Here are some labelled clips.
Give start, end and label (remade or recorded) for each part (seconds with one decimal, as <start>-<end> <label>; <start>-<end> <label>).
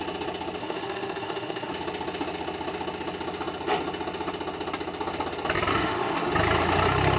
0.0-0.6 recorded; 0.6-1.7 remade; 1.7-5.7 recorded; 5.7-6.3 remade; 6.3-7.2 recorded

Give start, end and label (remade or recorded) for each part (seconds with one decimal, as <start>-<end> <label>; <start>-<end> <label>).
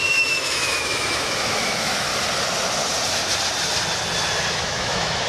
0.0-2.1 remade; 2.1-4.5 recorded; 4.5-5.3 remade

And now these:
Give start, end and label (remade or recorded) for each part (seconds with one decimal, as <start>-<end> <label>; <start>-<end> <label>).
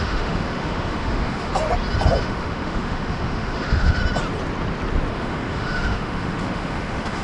0.0-1.5 remade; 1.5-2.2 recorded; 2.2-4.0 remade; 4.0-5.1 recorded; 5.1-7.2 remade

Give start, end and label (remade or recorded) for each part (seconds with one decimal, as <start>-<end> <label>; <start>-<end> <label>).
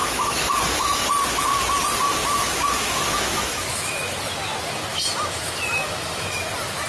0.0-1.1 remade; 1.1-2.2 recorded; 2.2-4.2 remade; 4.2-4.9 recorded; 4.9-6.5 remade; 6.5-6.9 recorded